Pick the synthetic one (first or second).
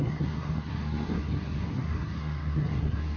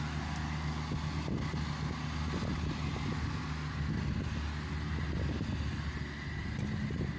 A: first